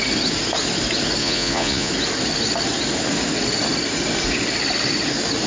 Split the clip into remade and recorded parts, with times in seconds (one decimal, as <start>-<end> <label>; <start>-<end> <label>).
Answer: 0.0-1.2 recorded; 1.2-1.9 remade; 1.9-5.5 recorded